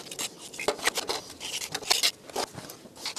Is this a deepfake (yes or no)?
no